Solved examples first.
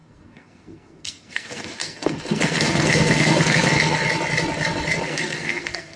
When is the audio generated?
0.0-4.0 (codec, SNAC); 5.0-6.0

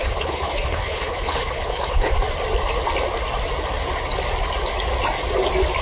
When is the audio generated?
0.0-2.1 (codec, HILCodec)

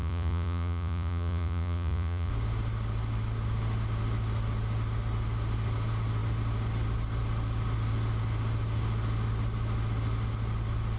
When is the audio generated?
0.0-2.3 (vocoder, Vocos)

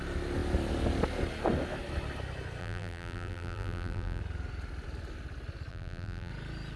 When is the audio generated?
2.6-4.2 (vocoder, BigVGAN v2); 5.7-6.3

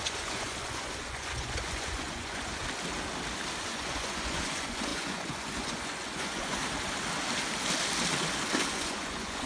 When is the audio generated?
0.0-2.6 (vocoder, Vocos); 3.6-6.6; 8.7-9.4

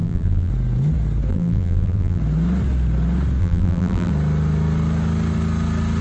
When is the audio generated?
0.0-0.5 (vocoder, BigVGAN v2); 1.3-2.2; 3.4-4.1

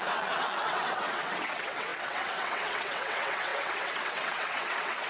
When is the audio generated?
0.0-5.1 (vocoder, WaveNeXt)

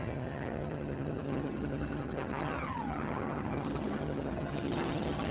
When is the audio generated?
0.0-5.3 (vocoder, HiFi-GAN)